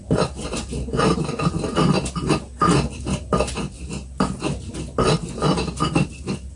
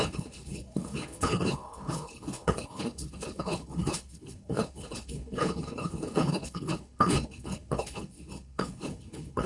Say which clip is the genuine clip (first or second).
first